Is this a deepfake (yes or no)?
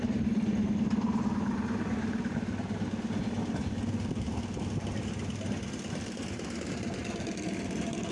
no